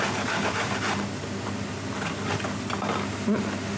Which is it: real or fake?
real